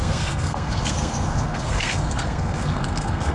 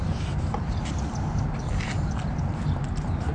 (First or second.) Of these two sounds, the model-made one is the first